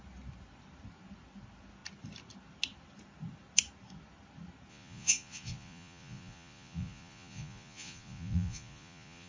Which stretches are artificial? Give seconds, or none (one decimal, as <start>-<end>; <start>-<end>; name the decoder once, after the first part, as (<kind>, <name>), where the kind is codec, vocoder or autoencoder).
4.7-9.3 (vocoder, Vocos)